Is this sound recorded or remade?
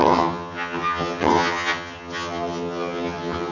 remade